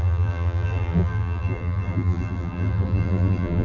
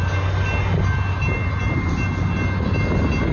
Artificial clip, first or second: first